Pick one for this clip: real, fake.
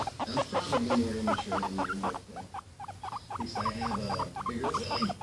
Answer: real